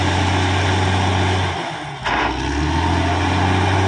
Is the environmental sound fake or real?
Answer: real